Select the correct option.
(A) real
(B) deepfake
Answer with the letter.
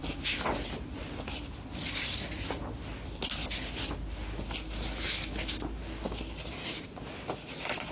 A